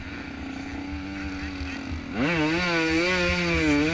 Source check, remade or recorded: recorded